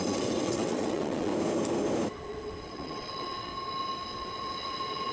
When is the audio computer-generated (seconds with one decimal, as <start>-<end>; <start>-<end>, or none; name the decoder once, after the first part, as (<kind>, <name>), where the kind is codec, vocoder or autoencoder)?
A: 0.0-1.3 (vocoder, WaveNeXt); 2.1-3.5; 4.1-5.1

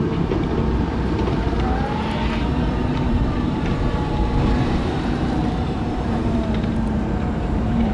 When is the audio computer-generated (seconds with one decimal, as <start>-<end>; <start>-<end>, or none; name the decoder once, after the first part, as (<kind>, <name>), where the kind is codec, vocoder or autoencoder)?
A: 0.0-7.9 (vocoder, BigVGAN v2)

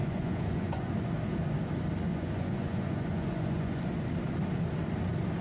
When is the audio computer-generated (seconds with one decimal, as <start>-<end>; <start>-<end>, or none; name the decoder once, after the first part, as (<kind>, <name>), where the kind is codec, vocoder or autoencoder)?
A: 0.0-0.9 (vocoder, Vocos); 2.1-3.8

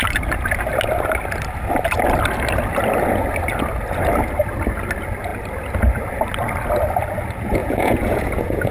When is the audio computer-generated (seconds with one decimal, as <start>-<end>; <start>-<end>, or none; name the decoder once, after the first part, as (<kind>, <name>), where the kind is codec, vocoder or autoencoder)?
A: 7.6-8.7 (vocoder, Vocos)